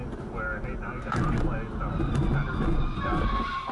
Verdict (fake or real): real